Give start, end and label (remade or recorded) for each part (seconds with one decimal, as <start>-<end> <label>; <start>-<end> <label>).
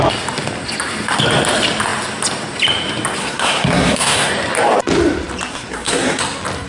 0.0-3.2 recorded; 3.2-4.3 remade; 4.3-5.5 recorded; 5.5-6.2 remade; 6.2-6.7 recorded